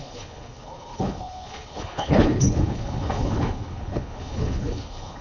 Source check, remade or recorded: remade